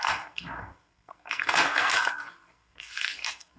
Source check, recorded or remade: remade